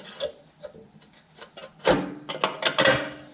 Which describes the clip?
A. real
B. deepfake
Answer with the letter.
A